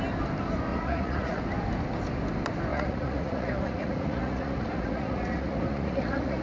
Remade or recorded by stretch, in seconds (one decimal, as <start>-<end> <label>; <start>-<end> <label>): 0.0-0.7 recorded; 0.7-1.4 remade; 1.4-2.7 recorded; 2.7-6.4 remade